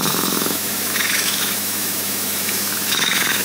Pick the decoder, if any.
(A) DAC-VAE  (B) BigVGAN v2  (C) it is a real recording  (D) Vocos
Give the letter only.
A